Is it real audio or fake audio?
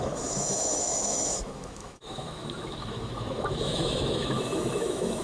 fake